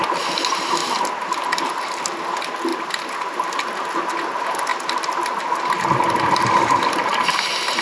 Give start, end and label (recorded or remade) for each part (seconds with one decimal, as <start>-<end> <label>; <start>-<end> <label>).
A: 0.0-7.8 recorded